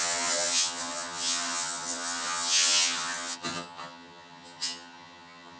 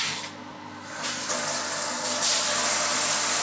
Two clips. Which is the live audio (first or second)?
second